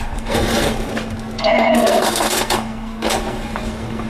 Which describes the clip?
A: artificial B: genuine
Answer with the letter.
A